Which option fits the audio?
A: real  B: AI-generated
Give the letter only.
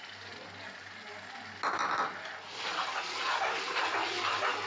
A